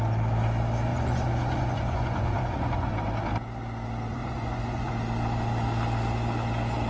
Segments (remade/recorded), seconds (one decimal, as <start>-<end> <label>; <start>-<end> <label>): 0.0-0.9 recorded; 0.9-2.9 remade; 2.9-4.1 recorded; 4.1-4.9 remade; 4.9-6.9 recorded